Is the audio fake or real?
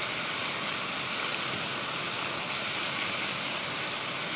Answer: real